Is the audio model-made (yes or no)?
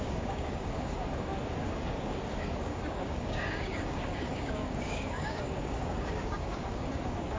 yes